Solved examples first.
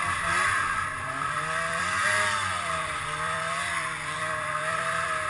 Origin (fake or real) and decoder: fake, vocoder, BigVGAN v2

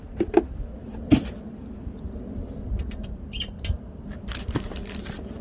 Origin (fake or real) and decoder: fake, vocoder, BigVGAN v2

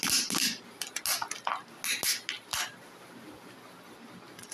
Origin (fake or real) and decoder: real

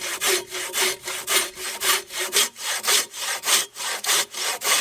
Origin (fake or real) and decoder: fake, vocoder, BigVGAN v2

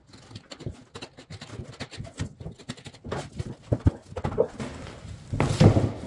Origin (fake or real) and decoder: real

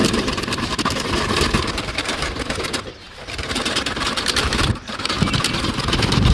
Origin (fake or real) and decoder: fake, vocoder, BigVGAN v2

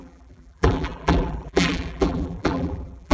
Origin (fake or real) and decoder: fake, vocoder, BigVGAN v2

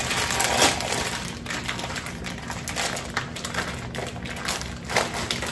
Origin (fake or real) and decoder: real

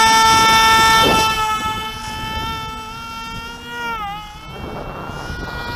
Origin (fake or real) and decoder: real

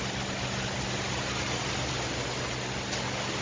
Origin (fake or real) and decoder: real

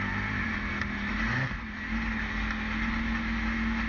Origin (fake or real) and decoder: real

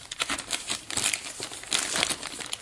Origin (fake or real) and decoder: fake, vocoder, BigVGAN v2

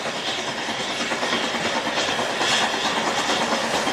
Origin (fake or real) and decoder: real